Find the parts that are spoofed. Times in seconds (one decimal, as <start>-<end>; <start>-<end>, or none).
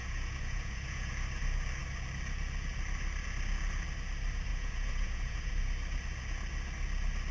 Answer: 0.0-1.1; 4.5-5.5